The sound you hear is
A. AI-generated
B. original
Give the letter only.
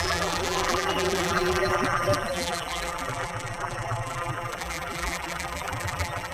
A